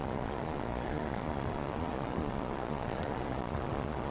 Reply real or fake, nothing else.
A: fake